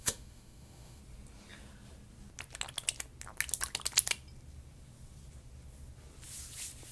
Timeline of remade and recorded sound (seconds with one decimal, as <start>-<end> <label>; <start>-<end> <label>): 0.0-1.0 remade; 1.0-6.9 recorded